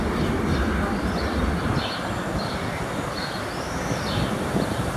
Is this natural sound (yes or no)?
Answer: yes